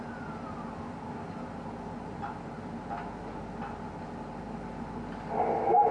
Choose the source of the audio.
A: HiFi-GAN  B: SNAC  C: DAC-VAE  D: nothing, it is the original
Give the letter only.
D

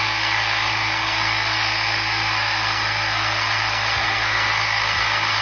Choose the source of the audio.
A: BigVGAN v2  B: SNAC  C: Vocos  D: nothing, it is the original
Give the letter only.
B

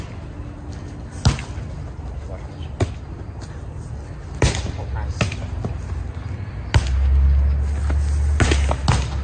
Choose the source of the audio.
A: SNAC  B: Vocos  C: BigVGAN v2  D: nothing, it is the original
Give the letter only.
D